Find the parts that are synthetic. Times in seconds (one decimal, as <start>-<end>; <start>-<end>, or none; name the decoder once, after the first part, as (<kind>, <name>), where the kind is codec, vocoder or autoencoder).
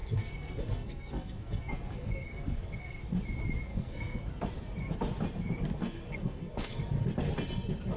0.0-3.0 (codec, SNAC); 3.7-4.3; 5.8-6.8